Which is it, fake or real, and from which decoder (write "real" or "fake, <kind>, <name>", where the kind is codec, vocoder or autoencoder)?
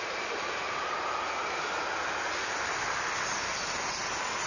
real